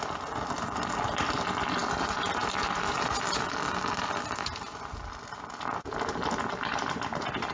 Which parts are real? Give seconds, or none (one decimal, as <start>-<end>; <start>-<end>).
0.0-7.5